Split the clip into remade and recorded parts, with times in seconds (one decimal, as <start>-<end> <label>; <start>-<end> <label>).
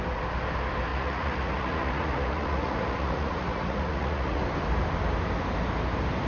0.0-0.9 recorded; 0.9-4.4 remade; 4.4-6.3 recorded